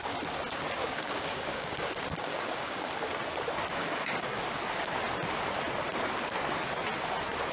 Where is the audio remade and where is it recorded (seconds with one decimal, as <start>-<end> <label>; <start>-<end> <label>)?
0.0-0.8 recorded; 0.8-2.9 remade; 2.9-3.8 recorded; 3.8-4.4 remade; 4.4-7.5 recorded